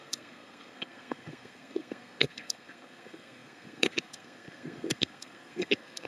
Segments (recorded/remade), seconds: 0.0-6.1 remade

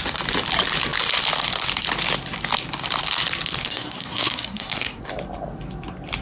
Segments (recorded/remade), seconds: 0.0-3.6 recorded; 3.6-5.0 remade; 5.0-6.2 recorded

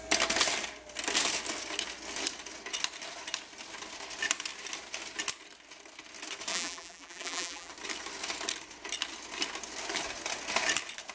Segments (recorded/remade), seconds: 0.0-6.5 recorded; 6.5-7.7 remade; 7.7-11.1 recorded

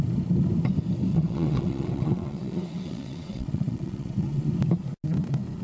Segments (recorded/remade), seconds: 0.0-1.1 recorded; 1.1-4.5 remade; 4.5-5.6 recorded

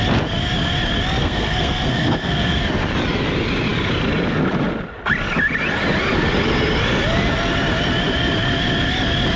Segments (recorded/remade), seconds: 0.0-1.2 recorded; 1.2-2.6 remade; 2.6-9.4 recorded

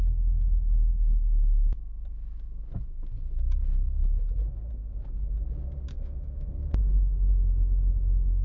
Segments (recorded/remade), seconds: 0.0-5.9 recorded; 5.9-6.5 remade; 6.5-8.4 recorded